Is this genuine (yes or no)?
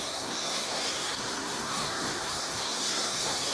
no